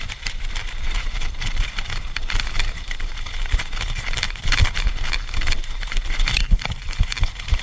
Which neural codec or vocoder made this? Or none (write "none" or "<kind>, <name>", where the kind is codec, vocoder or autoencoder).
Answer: vocoder, BigVGAN v2